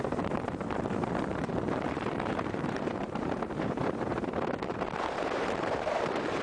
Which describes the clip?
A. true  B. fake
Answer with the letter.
B